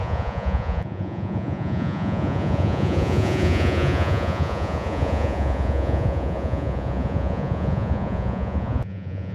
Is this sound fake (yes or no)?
yes